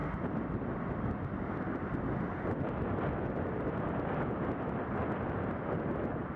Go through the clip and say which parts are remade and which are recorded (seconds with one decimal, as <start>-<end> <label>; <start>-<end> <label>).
0.0-6.4 recorded